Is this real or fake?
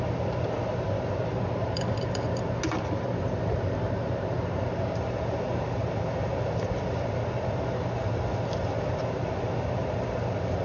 real